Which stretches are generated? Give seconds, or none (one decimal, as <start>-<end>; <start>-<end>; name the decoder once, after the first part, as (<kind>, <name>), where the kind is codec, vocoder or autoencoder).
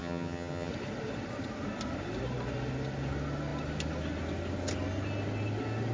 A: 0.0-0.7 (vocoder, HiFi-GAN)